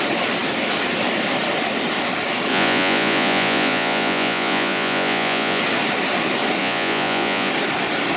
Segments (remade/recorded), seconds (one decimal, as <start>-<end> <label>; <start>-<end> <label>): 0.0-2.5 recorded; 2.5-5.6 remade; 5.6-6.6 recorded; 6.6-7.5 remade; 7.5-8.2 recorded